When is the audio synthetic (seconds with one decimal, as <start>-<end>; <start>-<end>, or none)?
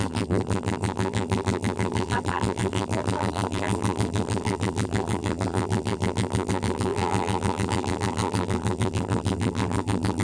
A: 0.0-10.2